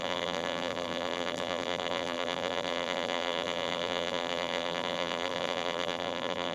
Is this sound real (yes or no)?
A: no